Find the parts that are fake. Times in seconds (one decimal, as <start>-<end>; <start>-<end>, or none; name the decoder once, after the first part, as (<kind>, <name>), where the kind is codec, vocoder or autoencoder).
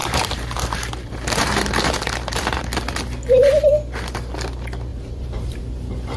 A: 0.0-2.6 (vocoder, BigVGAN v2); 4.9-6.2